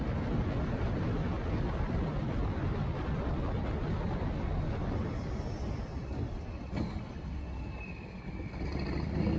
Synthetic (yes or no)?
no